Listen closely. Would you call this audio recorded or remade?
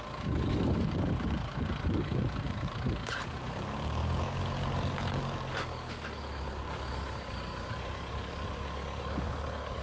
remade